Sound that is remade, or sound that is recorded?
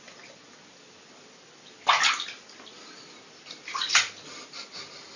recorded